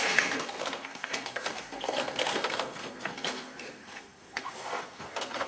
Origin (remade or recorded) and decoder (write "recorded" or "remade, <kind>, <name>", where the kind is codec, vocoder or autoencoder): remade, codec, SNAC